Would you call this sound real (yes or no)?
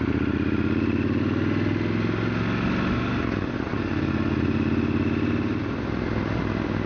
yes